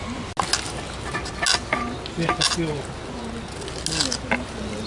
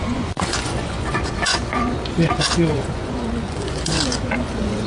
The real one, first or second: first